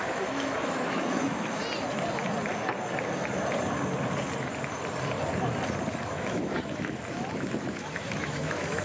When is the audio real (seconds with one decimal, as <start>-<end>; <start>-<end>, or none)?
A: 1.6-6.0